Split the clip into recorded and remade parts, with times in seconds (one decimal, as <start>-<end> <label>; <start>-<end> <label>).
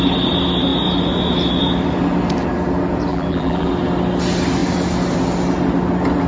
0.0-3.1 recorded; 3.1-3.7 remade; 3.7-6.3 recorded